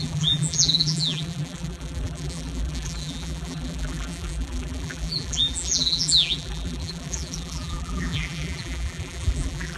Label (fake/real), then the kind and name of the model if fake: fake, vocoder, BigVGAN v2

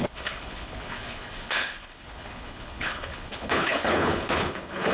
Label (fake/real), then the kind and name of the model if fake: fake, codec, HILCodec